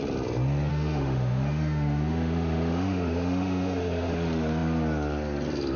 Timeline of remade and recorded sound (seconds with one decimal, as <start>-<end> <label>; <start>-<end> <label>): 0.0-0.7 recorded; 0.7-4.1 remade; 4.1-5.8 recorded